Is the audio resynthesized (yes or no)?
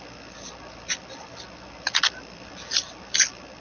no